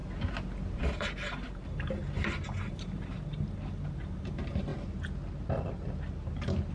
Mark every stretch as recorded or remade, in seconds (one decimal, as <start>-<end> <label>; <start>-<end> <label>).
0.0-1.0 recorded; 1.0-4.7 remade; 4.7-6.7 recorded